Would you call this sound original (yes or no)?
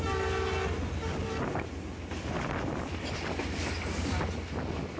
yes